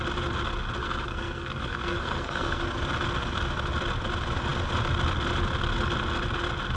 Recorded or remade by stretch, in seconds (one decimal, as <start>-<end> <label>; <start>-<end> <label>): 0.0-0.8 recorded; 0.8-2.6 remade; 2.6-6.8 recorded